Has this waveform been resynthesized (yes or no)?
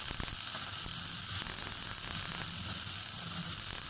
no